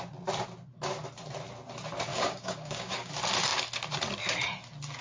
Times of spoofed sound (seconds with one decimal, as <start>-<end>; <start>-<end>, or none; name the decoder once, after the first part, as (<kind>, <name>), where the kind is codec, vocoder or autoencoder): 2.1-3.1 (codec, DAC)